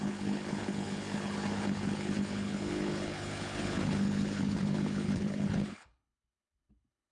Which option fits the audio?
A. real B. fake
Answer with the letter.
B